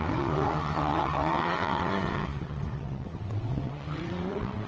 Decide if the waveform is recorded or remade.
remade